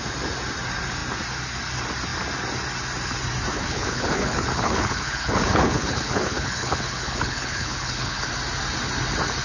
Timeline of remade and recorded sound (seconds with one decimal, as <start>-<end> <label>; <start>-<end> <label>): 0.0-3.5 recorded; 3.5-8.3 remade; 8.3-9.4 recorded